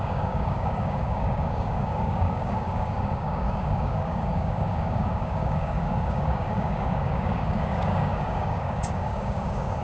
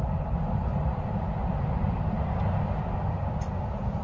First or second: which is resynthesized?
first